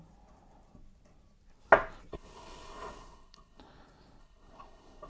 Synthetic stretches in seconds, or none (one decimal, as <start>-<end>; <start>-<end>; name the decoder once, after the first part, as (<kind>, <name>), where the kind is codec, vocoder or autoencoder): 2.1-3.6 (codec, HILCodec); 4.2-5.1